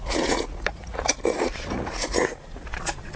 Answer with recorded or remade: remade